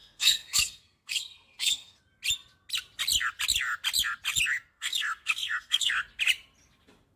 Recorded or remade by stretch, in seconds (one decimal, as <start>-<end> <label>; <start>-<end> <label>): 0.0-2.0 remade; 2.0-4.7 recorded; 4.7-5.9 remade; 5.9-7.2 recorded